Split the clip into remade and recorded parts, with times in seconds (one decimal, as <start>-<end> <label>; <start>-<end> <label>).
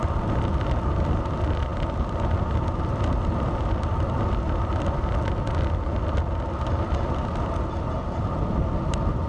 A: 0.0-9.3 recorded